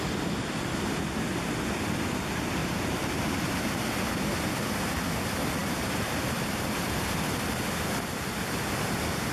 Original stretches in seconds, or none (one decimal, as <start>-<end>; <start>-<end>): 0.0-2.6; 3.2-5.6; 7.3-9.3